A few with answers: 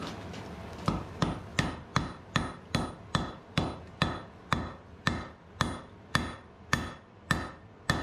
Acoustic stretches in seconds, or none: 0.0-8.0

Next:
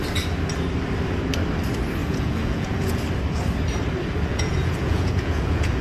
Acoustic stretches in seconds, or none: 0.0-2.0; 3.0-4.3

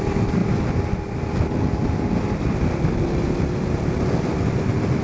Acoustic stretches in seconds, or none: 0.0-5.0

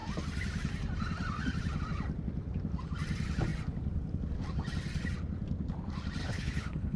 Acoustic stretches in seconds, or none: 0.0-6.2